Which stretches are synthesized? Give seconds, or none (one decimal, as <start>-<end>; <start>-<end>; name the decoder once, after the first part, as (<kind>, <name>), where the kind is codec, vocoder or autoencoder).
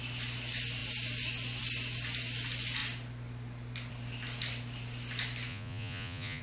5.5-6.4 (vocoder, Vocos)